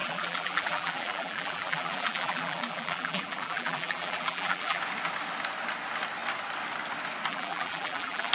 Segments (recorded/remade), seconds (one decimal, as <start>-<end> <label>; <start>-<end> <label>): 0.0-4.8 remade; 4.8-7.3 recorded; 7.3-8.3 remade